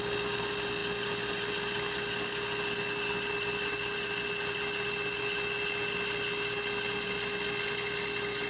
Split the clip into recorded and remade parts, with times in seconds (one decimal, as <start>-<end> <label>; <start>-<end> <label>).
0.0-8.5 recorded